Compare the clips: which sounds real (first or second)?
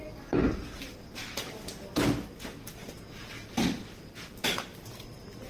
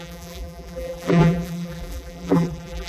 first